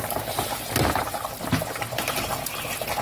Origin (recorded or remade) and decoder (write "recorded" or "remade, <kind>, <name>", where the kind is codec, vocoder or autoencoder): recorded